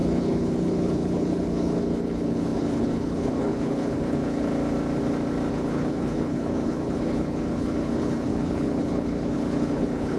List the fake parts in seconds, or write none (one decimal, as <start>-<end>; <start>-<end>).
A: 0.0-4.5; 5.5-10.2